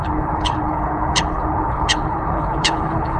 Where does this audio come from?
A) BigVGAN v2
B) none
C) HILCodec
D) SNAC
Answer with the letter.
C